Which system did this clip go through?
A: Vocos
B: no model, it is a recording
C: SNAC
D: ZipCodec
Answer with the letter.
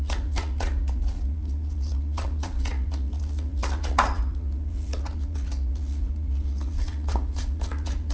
A